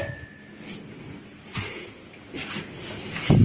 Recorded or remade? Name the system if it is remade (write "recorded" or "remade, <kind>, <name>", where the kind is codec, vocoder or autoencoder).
recorded